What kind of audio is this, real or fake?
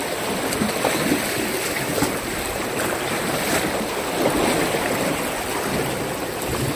real